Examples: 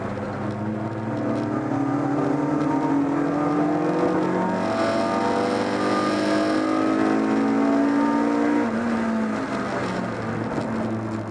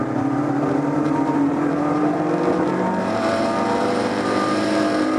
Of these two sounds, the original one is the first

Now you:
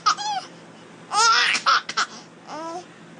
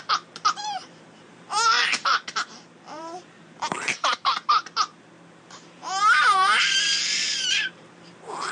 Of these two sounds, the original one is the first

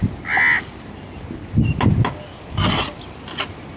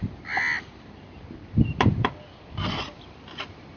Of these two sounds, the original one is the first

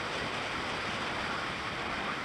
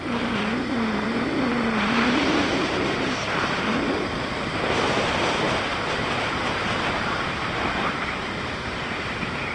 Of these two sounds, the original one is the first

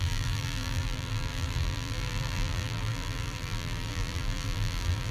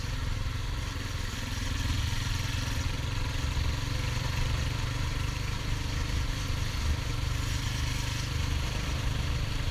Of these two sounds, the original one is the second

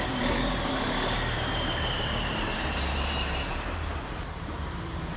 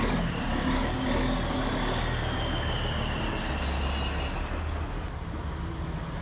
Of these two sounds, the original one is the second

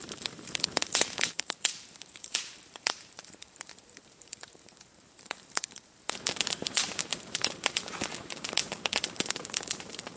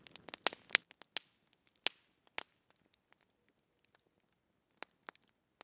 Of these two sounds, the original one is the second